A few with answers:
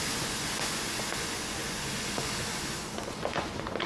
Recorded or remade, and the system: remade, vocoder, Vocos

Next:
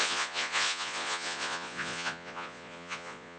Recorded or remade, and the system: remade, vocoder, Vocos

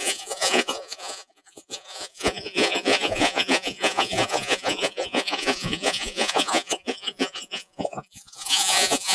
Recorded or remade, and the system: remade, vocoder, Vocos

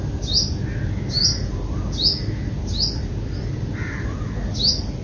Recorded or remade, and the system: recorded